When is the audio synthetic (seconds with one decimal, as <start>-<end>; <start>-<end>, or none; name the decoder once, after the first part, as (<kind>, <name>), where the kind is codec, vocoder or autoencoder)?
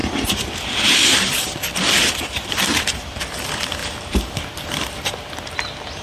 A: 0.0-3.2 (vocoder, BigVGAN v2)